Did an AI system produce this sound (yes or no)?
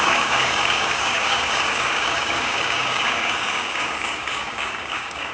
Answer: yes